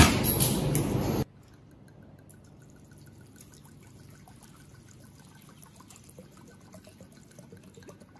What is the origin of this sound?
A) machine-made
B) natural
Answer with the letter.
B